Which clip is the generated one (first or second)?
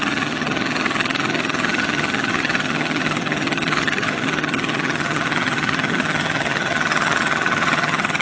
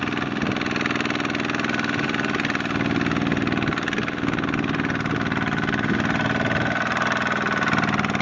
first